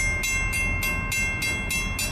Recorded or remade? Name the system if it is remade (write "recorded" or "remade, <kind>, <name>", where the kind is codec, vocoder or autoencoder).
recorded